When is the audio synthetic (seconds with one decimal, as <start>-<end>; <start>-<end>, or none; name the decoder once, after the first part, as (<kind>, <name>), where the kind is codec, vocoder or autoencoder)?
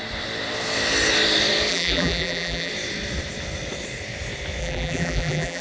1.7-2.7 (vocoder, BigVGAN v2); 4.6-5.6